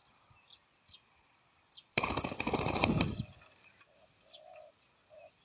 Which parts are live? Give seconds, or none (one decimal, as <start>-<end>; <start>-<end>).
0.0-5.4